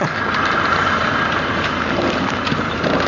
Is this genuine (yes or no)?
yes